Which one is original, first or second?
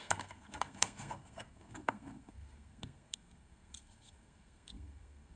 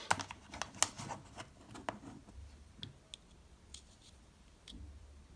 second